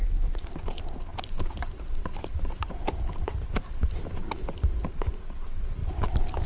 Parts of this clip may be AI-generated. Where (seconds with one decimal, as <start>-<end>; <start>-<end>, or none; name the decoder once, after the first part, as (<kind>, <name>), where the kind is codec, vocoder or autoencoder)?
none